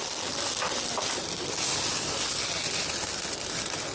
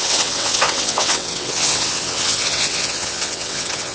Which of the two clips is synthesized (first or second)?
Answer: second